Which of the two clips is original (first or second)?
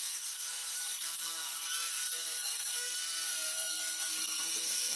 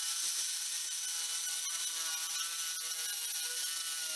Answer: second